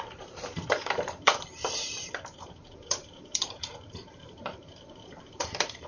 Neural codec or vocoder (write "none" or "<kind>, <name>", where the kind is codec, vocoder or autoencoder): vocoder, BigVGAN v2